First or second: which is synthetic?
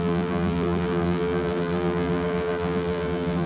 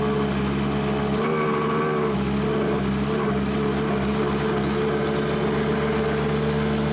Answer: first